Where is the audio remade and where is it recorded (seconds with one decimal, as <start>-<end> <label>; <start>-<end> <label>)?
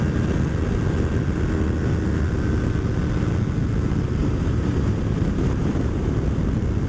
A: 0.0-4.2 recorded; 4.2-6.1 remade; 6.1-6.9 recorded